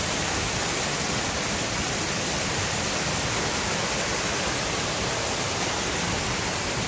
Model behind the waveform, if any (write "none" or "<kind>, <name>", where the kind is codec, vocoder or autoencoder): none